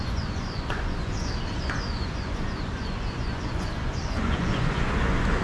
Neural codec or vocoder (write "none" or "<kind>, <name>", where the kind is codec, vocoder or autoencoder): vocoder, Vocos